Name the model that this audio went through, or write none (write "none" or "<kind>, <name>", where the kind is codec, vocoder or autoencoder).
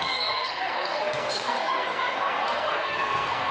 codec, SNAC